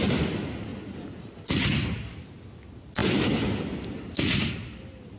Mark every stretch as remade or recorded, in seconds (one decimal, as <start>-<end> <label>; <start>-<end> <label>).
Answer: 0.0-5.2 recorded